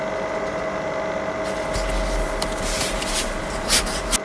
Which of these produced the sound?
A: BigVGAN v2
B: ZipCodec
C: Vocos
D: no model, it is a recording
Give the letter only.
D